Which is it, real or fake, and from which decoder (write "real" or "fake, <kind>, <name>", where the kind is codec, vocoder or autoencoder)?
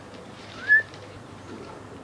fake, vocoder, BigVGAN v2